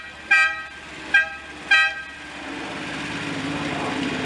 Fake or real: real